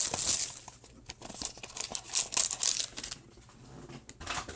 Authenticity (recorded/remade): recorded